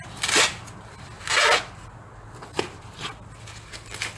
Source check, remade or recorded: recorded